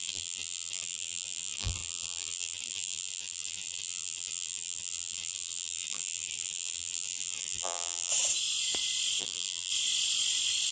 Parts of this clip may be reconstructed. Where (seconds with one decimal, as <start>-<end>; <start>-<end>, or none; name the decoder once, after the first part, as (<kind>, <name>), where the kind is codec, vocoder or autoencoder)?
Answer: 0.0-8.1 (vocoder, BigVGAN v2); 9.2-9.7